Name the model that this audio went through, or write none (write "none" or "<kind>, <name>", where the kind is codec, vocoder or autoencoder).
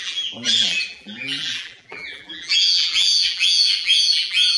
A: vocoder, BigVGAN v2